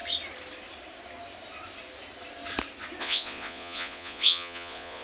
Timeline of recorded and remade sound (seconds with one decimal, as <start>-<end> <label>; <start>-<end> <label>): 0.0-3.0 recorded; 3.0-5.0 remade